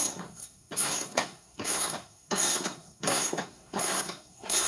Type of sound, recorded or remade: remade